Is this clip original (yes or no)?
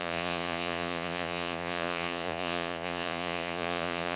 no